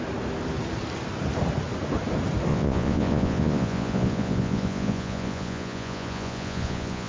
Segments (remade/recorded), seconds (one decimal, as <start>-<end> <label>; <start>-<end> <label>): 0.0-2.5 recorded; 2.5-7.1 remade